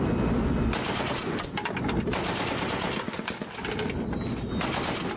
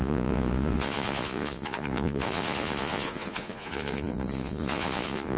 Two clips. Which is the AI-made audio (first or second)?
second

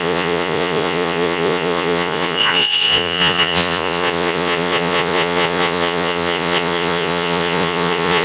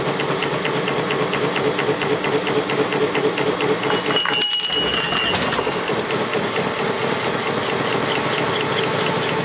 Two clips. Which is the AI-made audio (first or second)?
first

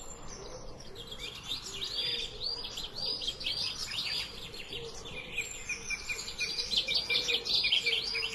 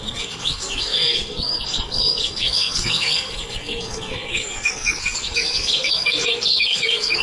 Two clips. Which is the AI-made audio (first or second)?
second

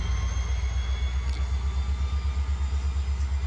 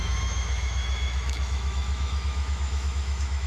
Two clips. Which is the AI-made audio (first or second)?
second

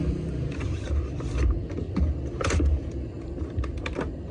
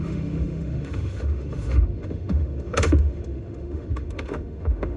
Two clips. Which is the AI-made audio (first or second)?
second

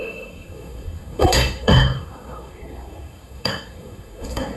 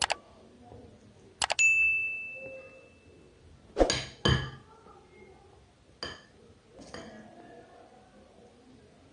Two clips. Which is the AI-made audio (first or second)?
first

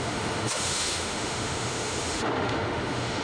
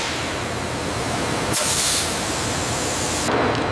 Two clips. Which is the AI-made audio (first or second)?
first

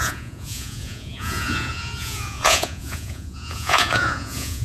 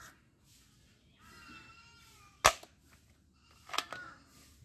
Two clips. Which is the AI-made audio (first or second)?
first